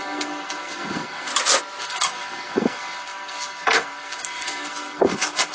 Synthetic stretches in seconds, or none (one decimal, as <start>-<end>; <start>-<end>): 0.0-1.3; 1.8-5.5